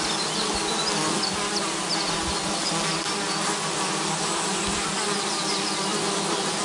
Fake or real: real